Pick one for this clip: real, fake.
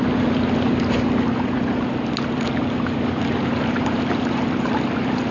real